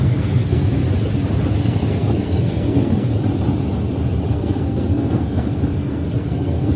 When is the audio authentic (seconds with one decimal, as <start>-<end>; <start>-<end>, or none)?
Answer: 0.8-1.6; 3.1-4.3